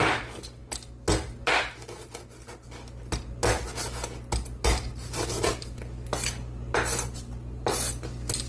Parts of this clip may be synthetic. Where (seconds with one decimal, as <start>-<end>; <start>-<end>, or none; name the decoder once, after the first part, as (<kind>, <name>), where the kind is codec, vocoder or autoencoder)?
none